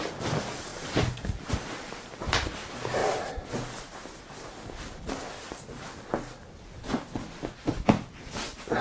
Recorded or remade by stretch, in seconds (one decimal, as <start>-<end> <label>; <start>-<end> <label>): 0.0-8.8 recorded